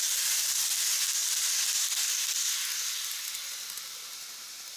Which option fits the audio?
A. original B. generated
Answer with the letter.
A